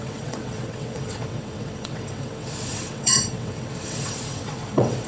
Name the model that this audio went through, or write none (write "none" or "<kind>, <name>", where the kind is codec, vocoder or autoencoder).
vocoder, WaveNeXt